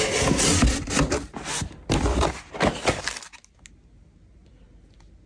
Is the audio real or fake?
real